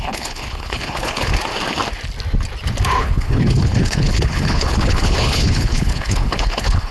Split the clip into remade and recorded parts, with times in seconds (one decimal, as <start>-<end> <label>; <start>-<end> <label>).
0.0-1.3 remade; 1.3-3.0 recorded; 3.0-6.9 remade